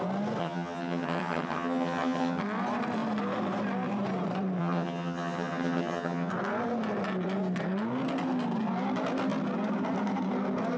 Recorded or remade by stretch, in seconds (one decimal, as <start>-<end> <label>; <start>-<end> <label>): 0.0-0.4 recorded; 0.4-2.4 remade; 2.4-4.6 recorded; 4.6-6.3 remade; 6.3-10.8 recorded